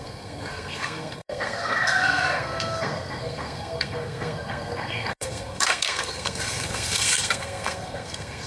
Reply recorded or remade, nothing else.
remade